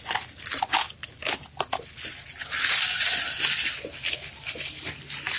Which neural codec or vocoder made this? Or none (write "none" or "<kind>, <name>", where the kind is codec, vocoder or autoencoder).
none